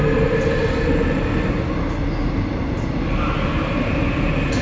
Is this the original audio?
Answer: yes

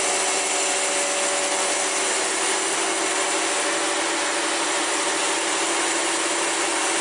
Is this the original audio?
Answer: yes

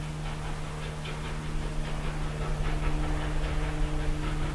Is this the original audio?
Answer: yes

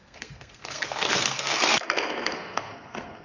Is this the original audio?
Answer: no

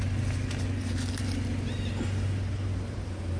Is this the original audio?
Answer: yes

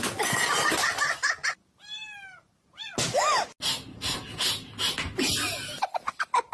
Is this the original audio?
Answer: yes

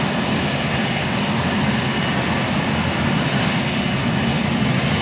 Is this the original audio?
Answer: yes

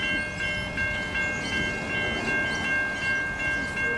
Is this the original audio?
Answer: yes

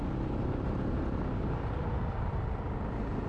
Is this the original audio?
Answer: yes